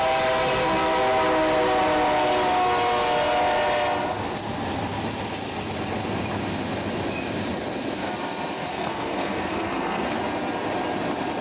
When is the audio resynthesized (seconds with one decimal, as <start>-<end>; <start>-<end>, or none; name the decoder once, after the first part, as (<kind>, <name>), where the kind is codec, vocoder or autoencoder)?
8.7-10.2 (codec, SNAC)